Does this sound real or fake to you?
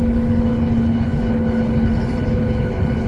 fake